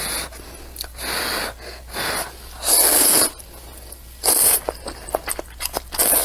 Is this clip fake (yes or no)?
no